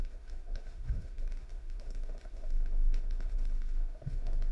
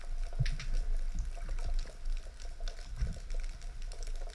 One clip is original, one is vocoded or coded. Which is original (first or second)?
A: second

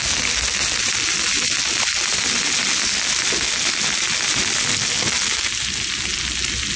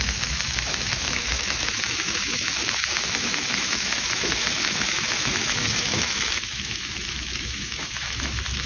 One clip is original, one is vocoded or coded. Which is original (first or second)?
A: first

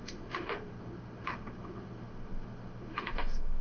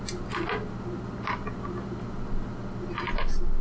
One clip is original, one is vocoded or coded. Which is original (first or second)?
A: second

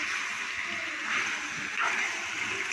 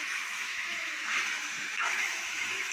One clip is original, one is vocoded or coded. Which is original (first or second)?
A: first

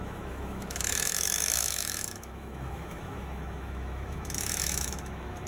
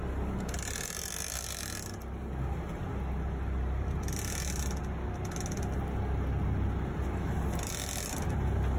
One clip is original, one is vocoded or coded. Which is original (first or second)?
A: second